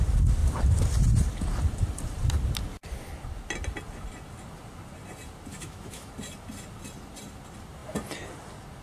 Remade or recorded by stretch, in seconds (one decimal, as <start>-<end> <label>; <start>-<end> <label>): 0.0-5.5 recorded; 5.5-6.1 remade; 6.1-8.8 recorded